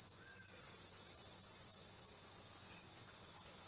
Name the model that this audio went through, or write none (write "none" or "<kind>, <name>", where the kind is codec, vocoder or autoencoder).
vocoder, Vocos